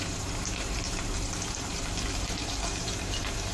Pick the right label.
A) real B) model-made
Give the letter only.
B